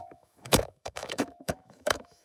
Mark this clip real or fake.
fake